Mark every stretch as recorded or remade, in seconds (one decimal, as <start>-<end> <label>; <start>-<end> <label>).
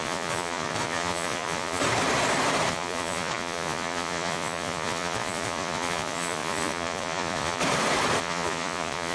0.0-1.8 remade; 1.8-2.7 recorded; 2.7-7.6 remade; 7.6-8.2 recorded; 8.2-9.1 remade